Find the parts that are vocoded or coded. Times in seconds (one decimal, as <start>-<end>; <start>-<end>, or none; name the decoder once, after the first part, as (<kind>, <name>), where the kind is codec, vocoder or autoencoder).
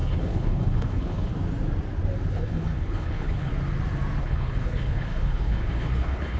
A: 0.0-1.3 (codec, HILCodec); 2.3-3.5; 4.2-6.4